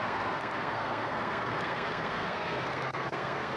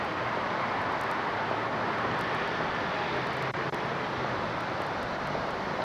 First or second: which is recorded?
second